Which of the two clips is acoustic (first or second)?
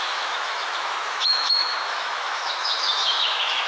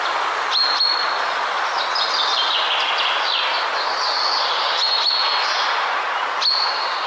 second